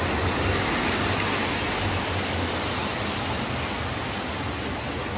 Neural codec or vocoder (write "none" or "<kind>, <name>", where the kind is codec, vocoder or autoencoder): none